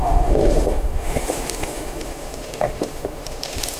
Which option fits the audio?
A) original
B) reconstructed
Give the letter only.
B